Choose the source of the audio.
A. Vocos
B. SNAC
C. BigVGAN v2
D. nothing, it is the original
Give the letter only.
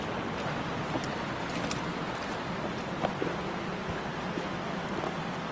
D